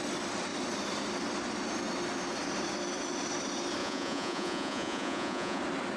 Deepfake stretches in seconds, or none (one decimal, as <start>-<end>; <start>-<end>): 3.8-5.6